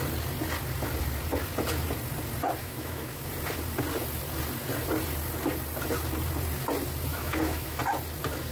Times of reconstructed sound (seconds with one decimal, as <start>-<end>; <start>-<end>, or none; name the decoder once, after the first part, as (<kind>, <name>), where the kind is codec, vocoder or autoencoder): 2.6-3.3 (autoencoder, DAC-VAE); 7.1-7.8